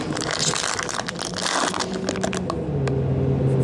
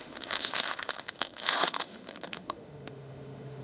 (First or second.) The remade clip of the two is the second